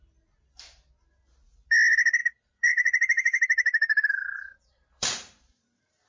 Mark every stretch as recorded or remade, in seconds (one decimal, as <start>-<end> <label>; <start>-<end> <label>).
0.0-2.2 recorded; 2.2-6.1 remade